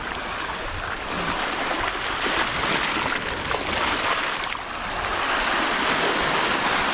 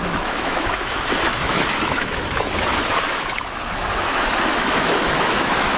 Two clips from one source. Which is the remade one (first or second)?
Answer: second